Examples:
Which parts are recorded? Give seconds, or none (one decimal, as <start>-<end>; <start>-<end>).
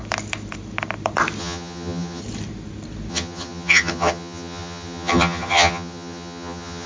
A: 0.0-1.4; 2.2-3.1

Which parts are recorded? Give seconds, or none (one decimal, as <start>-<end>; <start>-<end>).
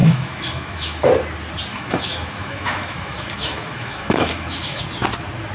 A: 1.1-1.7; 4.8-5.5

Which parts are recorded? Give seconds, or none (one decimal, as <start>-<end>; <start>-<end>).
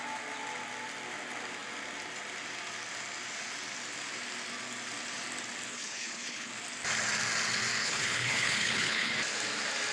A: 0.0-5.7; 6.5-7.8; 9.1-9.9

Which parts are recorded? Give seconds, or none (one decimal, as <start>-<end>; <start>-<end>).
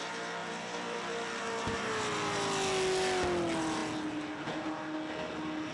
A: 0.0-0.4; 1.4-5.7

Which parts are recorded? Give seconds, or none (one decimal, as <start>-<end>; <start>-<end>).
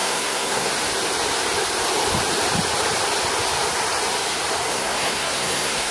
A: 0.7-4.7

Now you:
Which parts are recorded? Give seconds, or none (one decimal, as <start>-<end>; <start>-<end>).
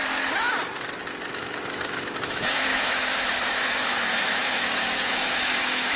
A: 0.0-1.3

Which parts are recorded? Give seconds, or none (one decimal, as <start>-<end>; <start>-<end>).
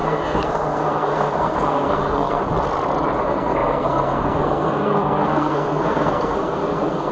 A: 2.4-3.2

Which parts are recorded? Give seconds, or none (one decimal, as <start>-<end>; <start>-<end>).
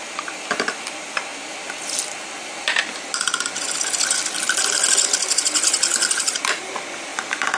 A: 0.0-7.6